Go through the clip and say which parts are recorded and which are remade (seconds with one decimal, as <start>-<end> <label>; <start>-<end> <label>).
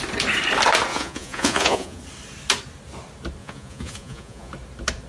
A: 0.0-0.9 recorded; 0.9-2.0 remade; 2.0-3.4 recorded; 3.4-4.5 remade; 4.5-5.1 recorded